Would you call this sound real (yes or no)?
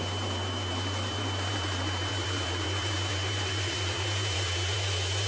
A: no